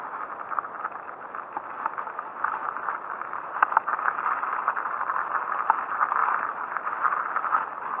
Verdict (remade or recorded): recorded